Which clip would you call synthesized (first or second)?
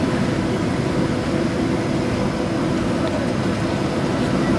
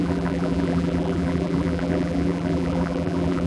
second